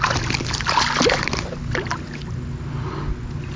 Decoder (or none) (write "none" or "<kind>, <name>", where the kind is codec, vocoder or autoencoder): none